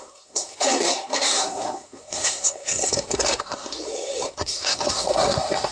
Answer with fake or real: fake